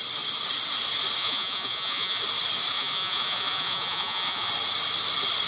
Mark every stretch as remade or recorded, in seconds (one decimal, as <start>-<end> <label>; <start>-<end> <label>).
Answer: 0.0-1.2 recorded; 1.2-2.2 remade; 2.2-2.7 recorded; 2.7-4.5 remade; 4.5-5.5 recorded